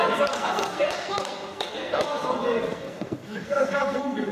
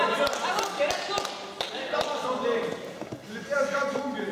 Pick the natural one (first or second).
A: second